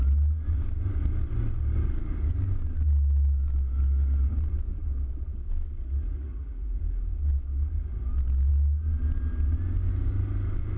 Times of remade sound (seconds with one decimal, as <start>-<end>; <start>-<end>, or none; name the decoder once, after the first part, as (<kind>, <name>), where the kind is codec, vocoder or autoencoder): 6.2-6.8 (vocoder, Vocos)